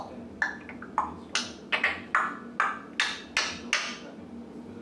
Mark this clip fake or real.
real